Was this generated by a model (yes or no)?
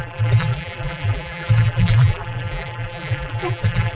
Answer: yes